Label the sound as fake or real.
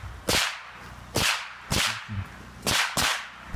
real